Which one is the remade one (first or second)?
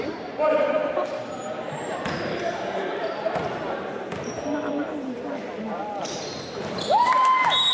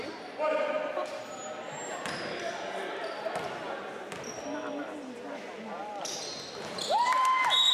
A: first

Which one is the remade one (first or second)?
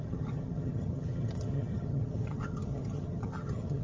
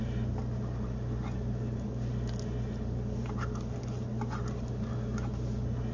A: first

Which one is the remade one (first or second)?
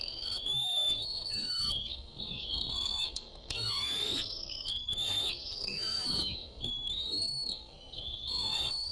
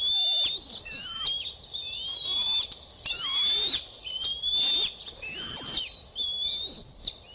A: first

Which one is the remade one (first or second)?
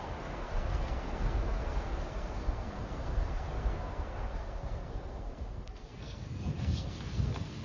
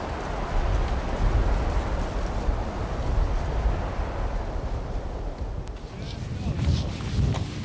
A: first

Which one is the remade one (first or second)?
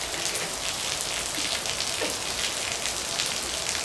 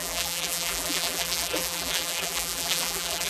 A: second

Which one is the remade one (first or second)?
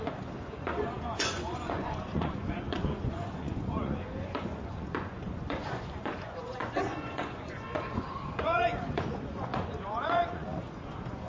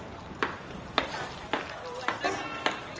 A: first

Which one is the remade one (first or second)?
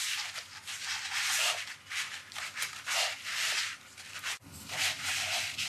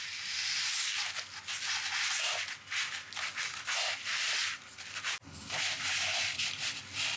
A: first